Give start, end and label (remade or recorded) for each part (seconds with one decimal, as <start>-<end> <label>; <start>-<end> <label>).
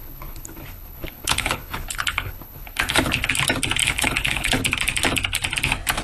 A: 0.0-3.3 remade; 3.3-3.8 recorded; 3.8-4.6 remade; 4.6-6.0 recorded